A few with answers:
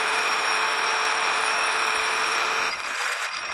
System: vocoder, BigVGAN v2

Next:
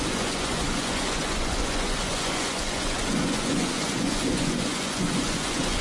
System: vocoder, Vocos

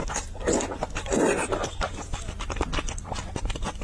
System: none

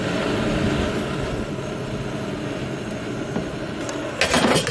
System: none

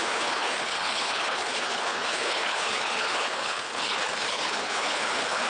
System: codec, HILCodec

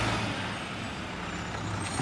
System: none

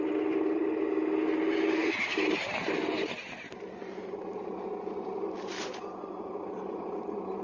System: none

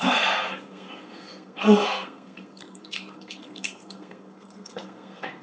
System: codec, SNAC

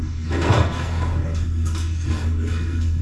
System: codec, SNAC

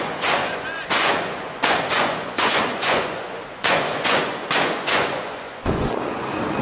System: vocoder, Vocos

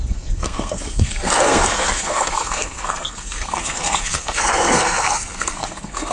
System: codec, SNAC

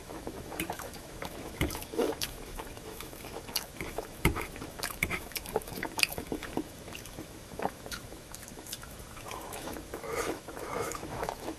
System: autoencoder, DAC-VAE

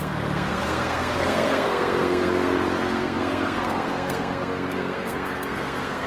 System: codec, SNAC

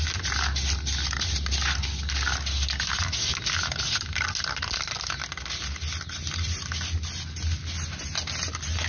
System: none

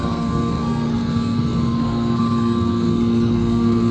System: codec, SNAC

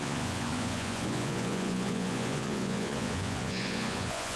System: vocoder, Vocos